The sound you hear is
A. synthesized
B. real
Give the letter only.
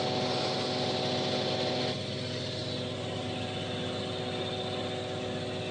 B